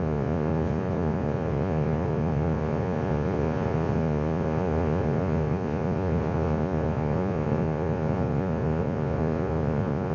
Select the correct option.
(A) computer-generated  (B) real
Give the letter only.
A